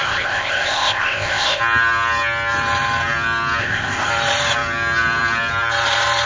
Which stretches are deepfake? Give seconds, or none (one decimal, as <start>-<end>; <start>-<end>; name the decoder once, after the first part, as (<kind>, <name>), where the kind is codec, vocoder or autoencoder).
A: 0.0-1.6 (codec, ZipCodec); 3.6-4.1